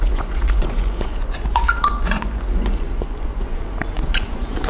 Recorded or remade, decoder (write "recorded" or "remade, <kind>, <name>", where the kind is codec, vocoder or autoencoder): remade, vocoder, Vocos